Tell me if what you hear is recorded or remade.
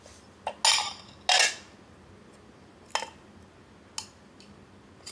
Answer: recorded